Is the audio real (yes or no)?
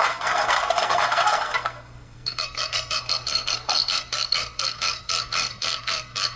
no